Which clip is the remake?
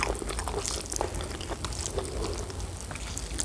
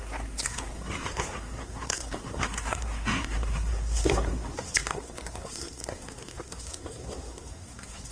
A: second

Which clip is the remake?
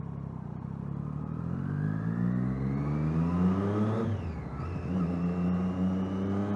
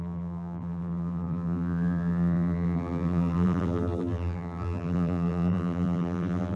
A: second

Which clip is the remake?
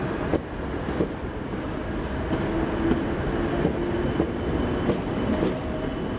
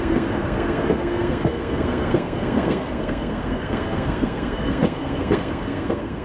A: second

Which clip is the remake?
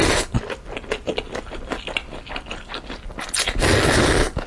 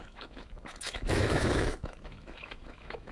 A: second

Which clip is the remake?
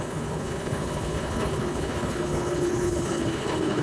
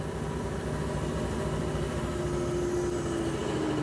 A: first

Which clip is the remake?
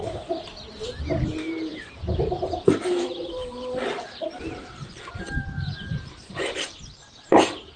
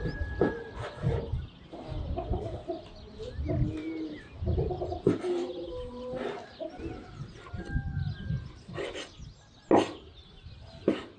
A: first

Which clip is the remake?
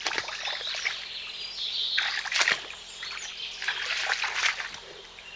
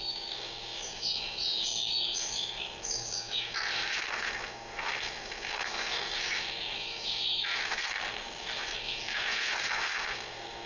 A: second